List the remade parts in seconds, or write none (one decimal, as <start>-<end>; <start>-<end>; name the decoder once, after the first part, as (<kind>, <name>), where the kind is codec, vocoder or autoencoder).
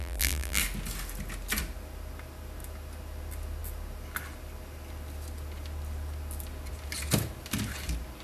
0.0-0.6 (vocoder, BigVGAN v2)